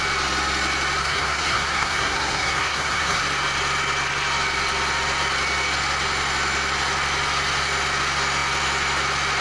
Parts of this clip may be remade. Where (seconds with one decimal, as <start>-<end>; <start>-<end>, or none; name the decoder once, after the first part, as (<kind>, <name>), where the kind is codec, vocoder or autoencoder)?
1.0-3.2 (codec, SNAC)